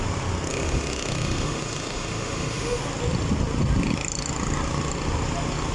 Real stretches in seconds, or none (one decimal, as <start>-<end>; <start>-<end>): 0.0-0.5; 2.8-5.7